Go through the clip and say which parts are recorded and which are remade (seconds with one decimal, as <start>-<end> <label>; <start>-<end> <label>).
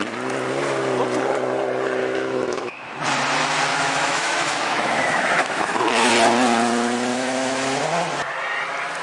0.0-2.0 recorded; 2.0-2.9 remade; 2.9-3.7 recorded; 3.7-6.1 remade; 6.1-7.1 recorded; 7.1-7.8 remade; 7.8-9.0 recorded